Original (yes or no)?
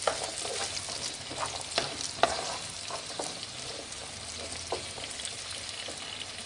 yes